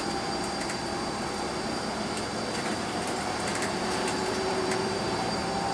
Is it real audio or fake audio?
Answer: fake